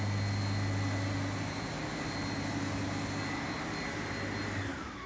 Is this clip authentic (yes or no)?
yes